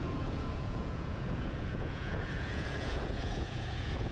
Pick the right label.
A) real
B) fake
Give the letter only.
B